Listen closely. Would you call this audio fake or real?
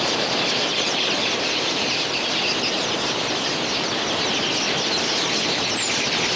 real